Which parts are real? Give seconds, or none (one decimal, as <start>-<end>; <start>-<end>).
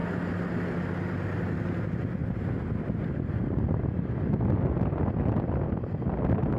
0.0-6.6